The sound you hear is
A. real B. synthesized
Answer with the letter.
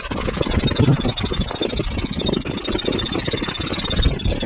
A